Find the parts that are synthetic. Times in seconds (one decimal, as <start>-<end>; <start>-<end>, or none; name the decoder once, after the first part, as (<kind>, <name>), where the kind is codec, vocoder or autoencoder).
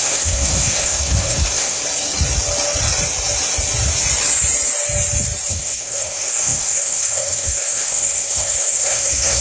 0.0-1.8 (codec, SNAC); 5.5-9.4